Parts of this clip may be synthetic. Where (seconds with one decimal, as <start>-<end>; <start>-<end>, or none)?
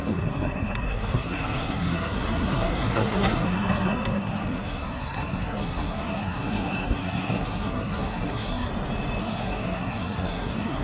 0.0-8.7; 9.2-10.8